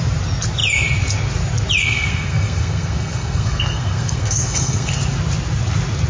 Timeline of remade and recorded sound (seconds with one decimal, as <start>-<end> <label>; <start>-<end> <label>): 0.0-1.8 recorded; 1.8-4.9 remade; 4.9-6.1 recorded